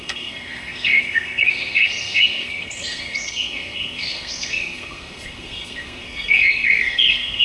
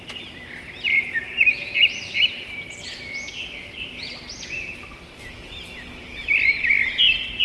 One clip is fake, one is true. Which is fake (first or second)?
first